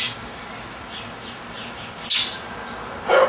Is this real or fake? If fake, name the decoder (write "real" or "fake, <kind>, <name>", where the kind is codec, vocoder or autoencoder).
real